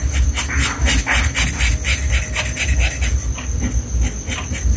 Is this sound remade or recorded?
recorded